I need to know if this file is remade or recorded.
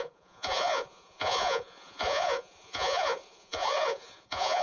remade